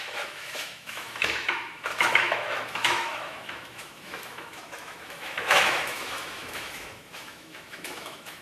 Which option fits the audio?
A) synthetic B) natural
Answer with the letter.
A